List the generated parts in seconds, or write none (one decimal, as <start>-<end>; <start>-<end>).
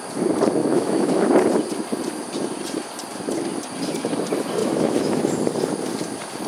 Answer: 0.6-1.3; 4.6-5.2